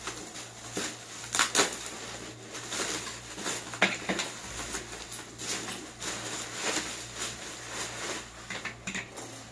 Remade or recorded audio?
recorded